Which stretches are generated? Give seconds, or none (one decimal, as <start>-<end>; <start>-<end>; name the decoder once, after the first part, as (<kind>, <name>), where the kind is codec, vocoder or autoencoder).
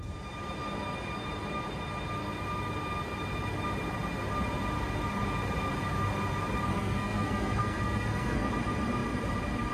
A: 6.7-8.5 (codec, SNAC)